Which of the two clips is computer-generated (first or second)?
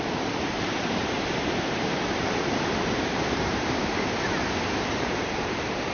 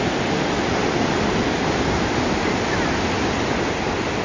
first